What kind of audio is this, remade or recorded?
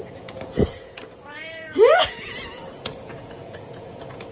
remade